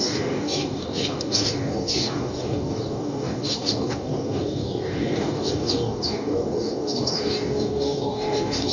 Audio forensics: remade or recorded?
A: remade